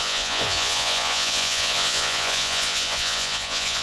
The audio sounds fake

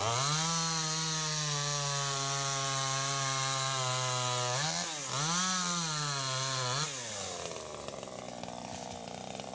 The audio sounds real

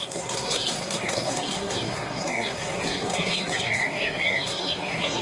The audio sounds fake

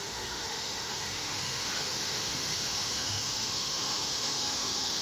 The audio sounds fake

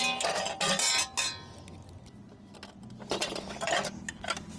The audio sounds real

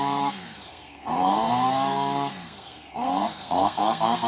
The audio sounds fake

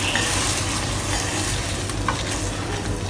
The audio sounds real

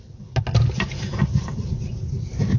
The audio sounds real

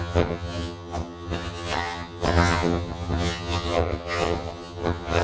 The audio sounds fake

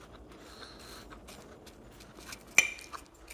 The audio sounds real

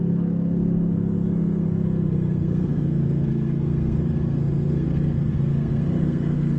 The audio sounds fake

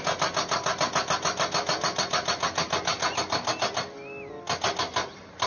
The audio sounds real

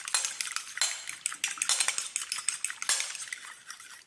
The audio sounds real